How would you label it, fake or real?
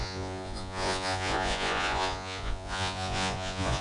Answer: fake